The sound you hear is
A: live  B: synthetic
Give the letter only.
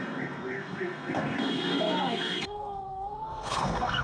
B